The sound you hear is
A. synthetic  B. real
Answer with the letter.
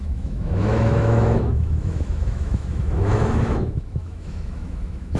A